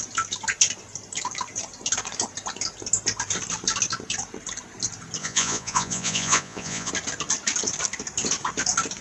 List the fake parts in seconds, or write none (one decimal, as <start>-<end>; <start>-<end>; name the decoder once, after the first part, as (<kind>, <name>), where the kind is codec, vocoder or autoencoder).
5.2-6.9 (vocoder, Vocos)